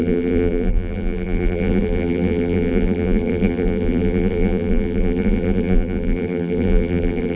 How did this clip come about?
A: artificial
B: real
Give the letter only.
A